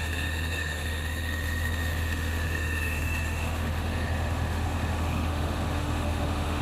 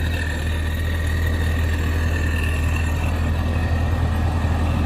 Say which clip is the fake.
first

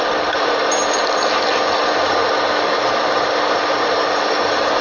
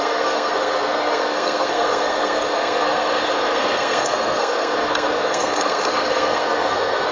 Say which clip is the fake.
second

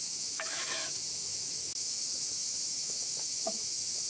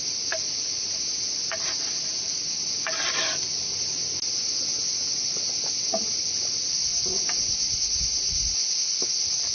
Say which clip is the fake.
first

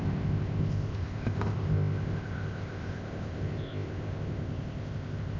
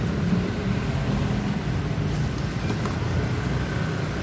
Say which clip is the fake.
first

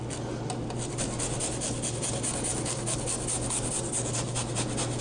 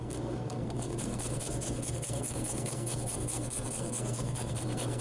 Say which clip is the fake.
second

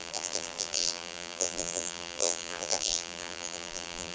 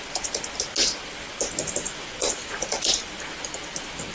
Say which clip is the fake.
first